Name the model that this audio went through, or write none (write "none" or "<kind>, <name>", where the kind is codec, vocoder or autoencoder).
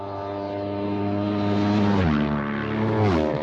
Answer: none